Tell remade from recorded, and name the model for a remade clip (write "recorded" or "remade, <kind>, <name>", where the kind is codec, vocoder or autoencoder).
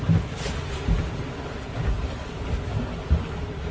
recorded